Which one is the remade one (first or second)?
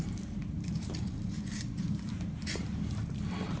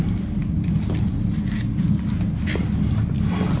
first